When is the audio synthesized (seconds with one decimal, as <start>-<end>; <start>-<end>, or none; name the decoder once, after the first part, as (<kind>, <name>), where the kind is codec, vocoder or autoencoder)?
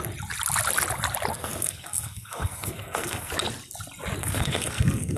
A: 1.3-3.3 (codec, SNAC); 4.2-5.2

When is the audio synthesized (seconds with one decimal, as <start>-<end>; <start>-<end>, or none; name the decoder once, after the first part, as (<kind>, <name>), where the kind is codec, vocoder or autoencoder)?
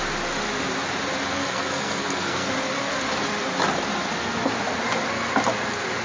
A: 1.3-2.5 (codec, SNAC)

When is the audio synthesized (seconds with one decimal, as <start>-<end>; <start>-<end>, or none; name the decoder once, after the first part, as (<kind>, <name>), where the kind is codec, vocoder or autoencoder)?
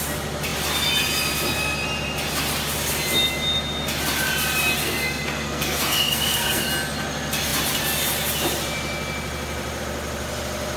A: 4.8-6.7 (codec, SNAC)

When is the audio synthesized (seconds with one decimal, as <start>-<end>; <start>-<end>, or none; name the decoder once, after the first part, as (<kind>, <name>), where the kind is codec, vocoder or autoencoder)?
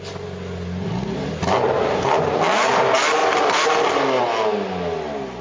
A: none